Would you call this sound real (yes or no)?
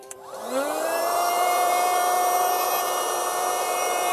no